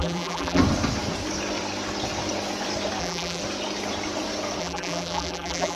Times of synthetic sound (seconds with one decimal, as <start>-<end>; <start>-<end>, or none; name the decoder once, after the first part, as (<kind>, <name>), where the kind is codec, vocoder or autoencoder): 0.0-0.6 (vocoder, BigVGAN v2); 3.0-3.4; 4.6-5.7